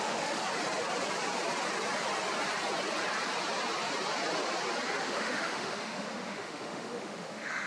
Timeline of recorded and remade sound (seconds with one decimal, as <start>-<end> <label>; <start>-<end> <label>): 0.0-0.4 remade; 0.4-5.0 recorded; 5.0-7.7 remade